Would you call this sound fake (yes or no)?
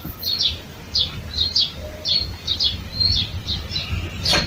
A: no